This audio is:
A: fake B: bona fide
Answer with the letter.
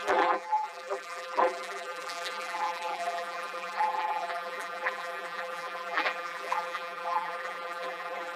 A